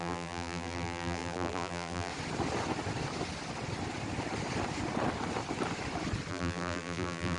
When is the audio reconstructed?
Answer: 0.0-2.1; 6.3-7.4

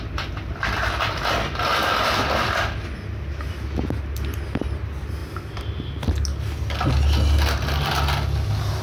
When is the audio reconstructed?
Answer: none